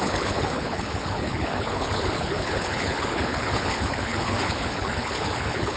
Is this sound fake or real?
fake